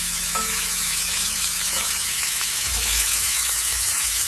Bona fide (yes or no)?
no